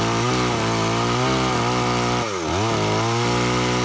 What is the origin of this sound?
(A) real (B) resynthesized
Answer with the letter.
A